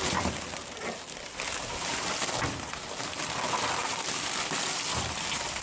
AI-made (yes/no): no